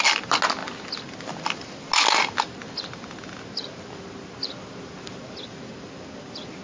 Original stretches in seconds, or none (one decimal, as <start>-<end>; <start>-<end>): 0.0-6.6